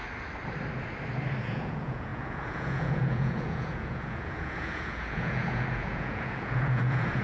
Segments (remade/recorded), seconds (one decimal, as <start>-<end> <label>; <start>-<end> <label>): 0.0-1.4 recorded; 1.4-7.2 remade